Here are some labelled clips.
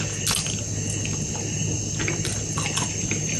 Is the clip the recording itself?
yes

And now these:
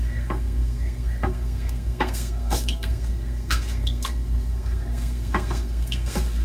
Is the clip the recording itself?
no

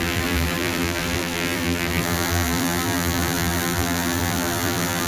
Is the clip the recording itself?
no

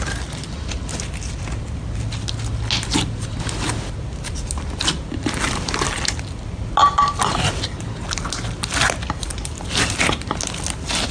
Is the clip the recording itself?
yes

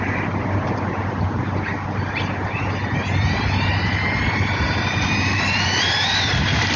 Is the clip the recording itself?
yes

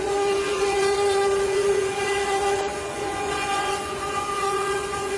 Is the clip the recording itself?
no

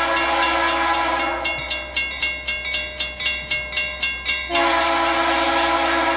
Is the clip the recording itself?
yes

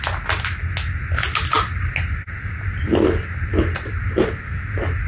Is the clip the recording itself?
yes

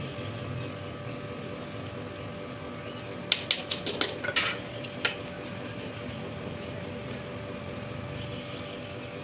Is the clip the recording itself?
yes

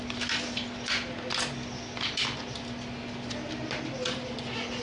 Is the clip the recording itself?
yes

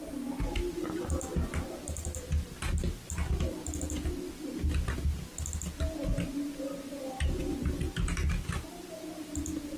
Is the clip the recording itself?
yes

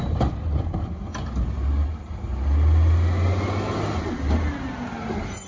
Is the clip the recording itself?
yes